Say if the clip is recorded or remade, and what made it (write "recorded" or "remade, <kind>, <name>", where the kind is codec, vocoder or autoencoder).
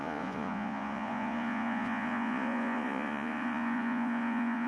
remade, vocoder, Vocos